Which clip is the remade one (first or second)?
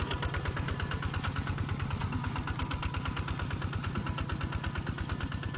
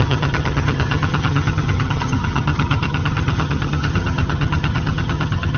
second